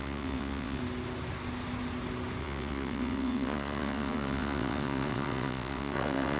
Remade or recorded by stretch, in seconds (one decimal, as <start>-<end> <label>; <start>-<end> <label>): 0.0-0.8 remade; 0.8-2.4 recorded; 2.4-6.4 remade